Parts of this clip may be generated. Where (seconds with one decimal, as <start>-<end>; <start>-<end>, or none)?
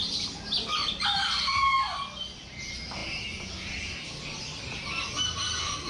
none